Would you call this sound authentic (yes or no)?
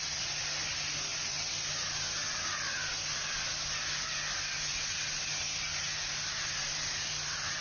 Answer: yes